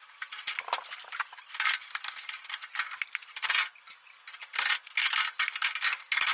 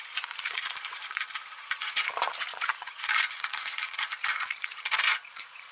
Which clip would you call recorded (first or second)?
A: first